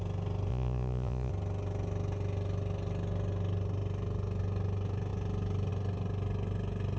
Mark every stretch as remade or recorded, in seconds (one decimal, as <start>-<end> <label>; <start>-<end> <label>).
0.0-0.5 recorded; 0.5-1.3 remade; 1.3-7.0 recorded